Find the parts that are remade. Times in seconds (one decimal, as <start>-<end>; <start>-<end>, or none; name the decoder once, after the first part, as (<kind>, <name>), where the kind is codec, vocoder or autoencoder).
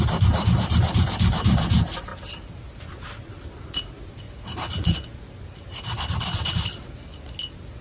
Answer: none